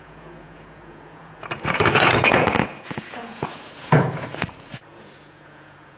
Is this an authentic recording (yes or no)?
no